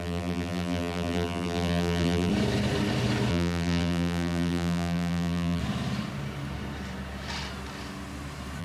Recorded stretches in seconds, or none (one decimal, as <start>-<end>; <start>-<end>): 2.3-3.3; 5.6-8.6